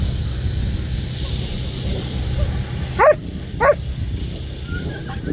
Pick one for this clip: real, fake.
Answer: real